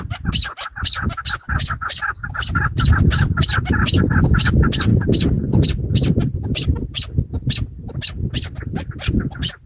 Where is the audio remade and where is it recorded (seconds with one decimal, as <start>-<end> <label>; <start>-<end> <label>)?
0.0-9.7 recorded